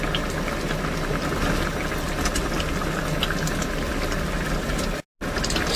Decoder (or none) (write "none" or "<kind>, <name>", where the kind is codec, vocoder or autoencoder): none